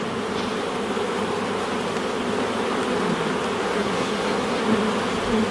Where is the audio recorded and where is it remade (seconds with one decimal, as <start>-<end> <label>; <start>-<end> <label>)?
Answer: 0.0-3.6 recorded; 3.6-4.6 remade; 4.6-5.5 recorded